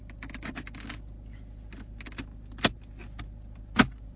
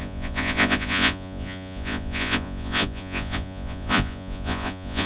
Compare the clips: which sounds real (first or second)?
first